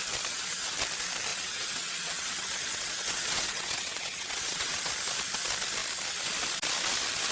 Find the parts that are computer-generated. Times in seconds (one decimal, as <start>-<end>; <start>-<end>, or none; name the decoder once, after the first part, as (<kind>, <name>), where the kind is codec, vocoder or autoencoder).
1.3-4.9 (vocoder, WaveNeXt)